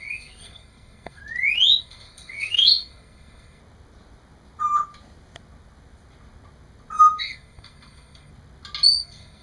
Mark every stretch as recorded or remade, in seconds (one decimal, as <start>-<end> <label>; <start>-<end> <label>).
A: 0.0-1.2 remade; 1.2-1.8 recorded; 1.8-3.6 remade; 3.6-7.2 recorded; 7.2-8.3 remade; 8.3-8.9 recorded; 8.9-9.4 remade